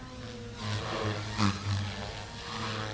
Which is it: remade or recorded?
recorded